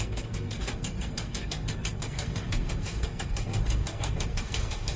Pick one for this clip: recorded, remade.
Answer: remade